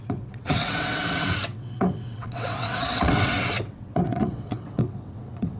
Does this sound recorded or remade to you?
remade